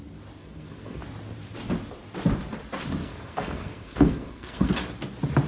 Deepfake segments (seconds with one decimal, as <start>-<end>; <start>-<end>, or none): 0.4-1.0; 3.0-4.7